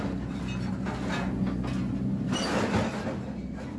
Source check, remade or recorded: recorded